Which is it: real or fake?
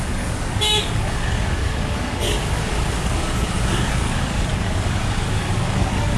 fake